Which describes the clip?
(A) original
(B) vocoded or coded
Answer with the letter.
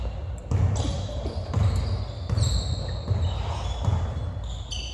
A